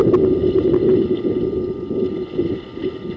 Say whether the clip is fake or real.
real